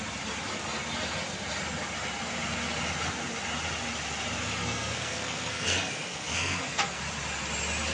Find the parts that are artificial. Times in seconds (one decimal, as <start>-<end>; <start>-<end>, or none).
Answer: 4.6-7.0